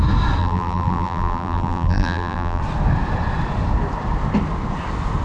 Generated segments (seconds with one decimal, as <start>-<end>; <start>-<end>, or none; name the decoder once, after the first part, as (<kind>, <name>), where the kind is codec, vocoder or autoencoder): 0.4-2.6 (vocoder, BigVGAN v2)